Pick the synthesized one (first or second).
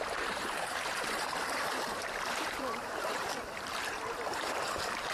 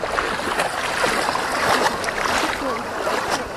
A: first